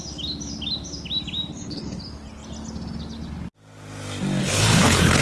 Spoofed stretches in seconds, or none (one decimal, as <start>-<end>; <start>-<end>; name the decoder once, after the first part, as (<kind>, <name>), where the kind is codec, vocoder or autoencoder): 1.5-2.0 (codec, HILCodec); 4.4-5.2